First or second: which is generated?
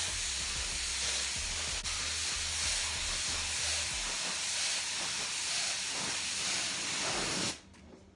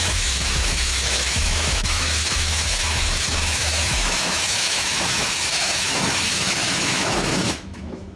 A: second